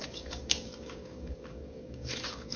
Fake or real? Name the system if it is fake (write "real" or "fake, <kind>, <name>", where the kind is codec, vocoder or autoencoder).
fake, codec, DAC